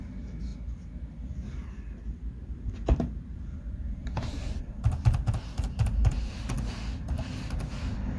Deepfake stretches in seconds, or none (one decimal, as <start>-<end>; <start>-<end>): none